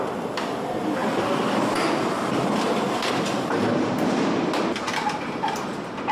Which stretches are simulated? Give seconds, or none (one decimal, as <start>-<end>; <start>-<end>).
none